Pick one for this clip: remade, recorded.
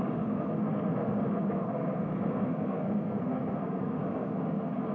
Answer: remade